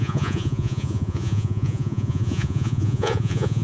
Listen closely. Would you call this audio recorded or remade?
remade